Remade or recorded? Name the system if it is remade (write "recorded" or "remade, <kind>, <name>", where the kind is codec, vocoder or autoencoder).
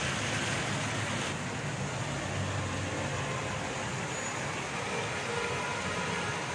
recorded